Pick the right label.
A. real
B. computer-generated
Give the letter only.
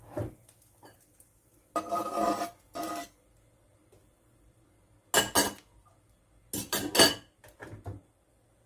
A